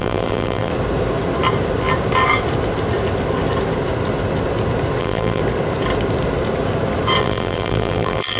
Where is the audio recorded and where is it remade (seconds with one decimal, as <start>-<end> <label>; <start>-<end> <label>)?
0.0-0.7 remade; 0.7-5.0 recorded; 5.0-5.4 remade; 5.4-7.2 recorded; 7.2-8.4 remade